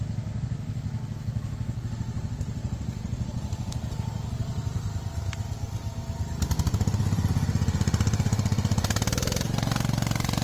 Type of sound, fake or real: real